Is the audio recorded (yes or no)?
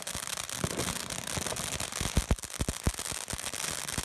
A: yes